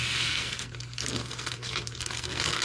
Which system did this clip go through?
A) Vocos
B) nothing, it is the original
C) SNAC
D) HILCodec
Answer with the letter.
C